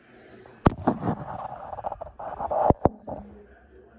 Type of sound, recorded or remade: recorded